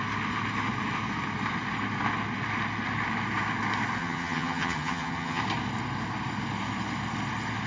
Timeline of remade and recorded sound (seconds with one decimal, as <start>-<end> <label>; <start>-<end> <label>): 0.0-4.0 recorded; 4.0-5.4 remade; 5.4-7.7 recorded